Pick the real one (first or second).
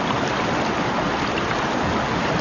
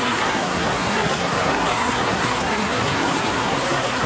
first